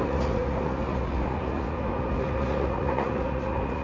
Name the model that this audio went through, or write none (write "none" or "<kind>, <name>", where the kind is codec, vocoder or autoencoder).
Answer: vocoder, Vocos